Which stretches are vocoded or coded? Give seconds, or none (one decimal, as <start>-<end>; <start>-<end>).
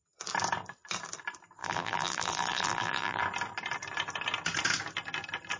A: 1.6-3.2